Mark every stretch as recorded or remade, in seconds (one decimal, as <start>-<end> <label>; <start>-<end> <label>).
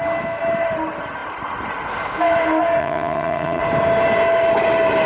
0.0-2.8 recorded; 2.8-3.6 remade; 3.6-5.1 recorded